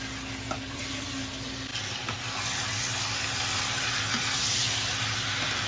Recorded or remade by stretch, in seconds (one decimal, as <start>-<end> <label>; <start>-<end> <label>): 0.0-5.7 recorded